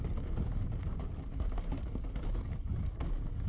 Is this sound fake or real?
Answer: real